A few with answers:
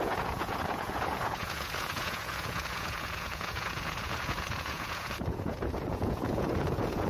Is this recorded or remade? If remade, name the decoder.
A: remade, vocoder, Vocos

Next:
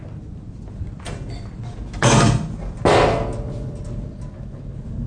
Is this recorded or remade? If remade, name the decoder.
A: recorded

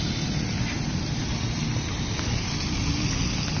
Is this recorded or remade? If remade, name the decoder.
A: recorded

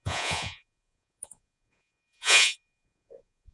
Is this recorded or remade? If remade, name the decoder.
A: remade, vocoder, Vocos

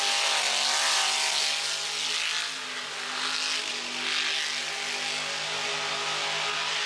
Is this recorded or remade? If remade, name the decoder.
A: recorded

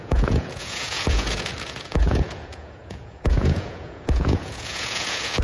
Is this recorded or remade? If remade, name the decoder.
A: remade, vocoder, Vocos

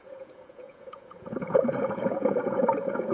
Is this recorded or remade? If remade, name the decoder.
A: remade, vocoder, Vocos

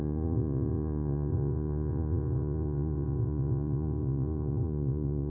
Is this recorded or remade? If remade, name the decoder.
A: remade, vocoder, Vocos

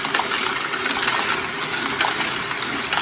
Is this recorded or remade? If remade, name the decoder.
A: recorded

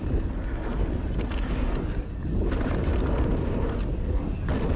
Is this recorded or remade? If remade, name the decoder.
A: recorded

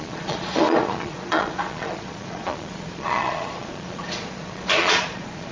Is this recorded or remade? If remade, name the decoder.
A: remade, vocoder, Vocos